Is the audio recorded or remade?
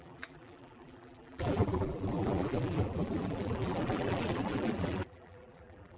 remade